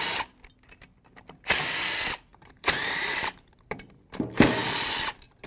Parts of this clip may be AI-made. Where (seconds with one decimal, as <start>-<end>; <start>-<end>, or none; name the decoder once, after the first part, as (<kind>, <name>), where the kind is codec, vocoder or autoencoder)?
2.3-3.5 (vocoder, BigVGAN v2)